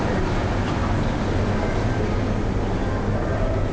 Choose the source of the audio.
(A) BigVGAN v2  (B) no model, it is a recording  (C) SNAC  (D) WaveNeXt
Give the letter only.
B